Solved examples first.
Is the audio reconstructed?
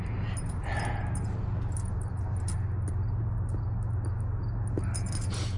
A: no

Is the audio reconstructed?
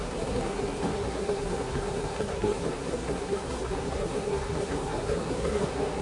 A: yes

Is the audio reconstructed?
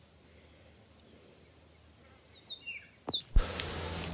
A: no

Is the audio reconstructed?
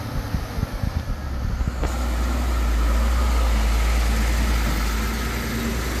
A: no